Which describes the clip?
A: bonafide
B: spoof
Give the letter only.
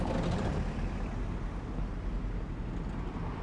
A